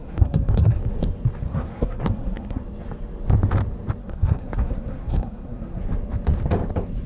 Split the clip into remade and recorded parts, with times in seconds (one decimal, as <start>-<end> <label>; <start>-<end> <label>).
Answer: 0.0-0.8 remade; 0.8-1.5 recorded; 1.5-2.6 remade; 2.6-4.0 recorded; 4.0-5.8 remade; 5.8-7.1 recorded